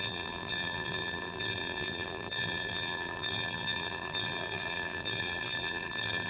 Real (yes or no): no